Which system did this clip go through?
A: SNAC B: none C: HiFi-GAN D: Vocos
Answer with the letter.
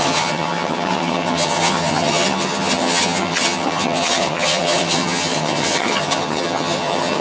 C